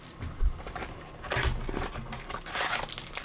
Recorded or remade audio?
recorded